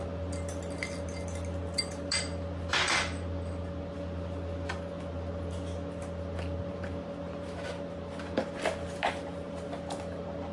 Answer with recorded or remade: recorded